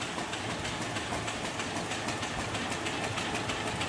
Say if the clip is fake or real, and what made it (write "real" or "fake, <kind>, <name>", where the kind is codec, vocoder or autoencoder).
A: real